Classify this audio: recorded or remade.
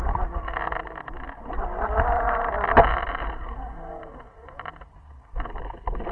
recorded